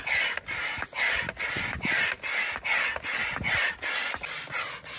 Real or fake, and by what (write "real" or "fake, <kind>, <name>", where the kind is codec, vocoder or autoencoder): real